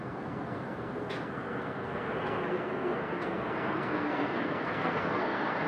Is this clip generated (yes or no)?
yes